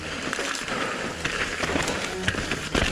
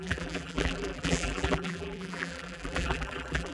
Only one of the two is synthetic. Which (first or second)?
second